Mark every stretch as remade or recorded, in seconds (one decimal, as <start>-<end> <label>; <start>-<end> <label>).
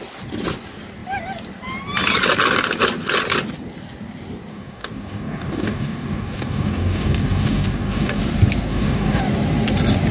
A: 0.0-4.5 recorded; 4.5-8.2 remade; 8.2-8.7 recorded; 8.7-9.2 remade; 9.2-10.1 recorded